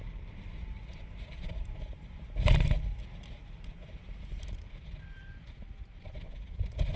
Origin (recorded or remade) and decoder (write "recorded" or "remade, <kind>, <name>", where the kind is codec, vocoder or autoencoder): recorded